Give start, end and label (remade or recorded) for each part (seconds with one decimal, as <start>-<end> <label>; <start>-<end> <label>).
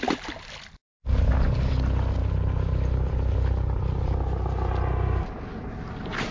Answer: 0.0-6.3 recorded